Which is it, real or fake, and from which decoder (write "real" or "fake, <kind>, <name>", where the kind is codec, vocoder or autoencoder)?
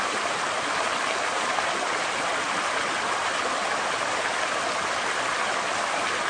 real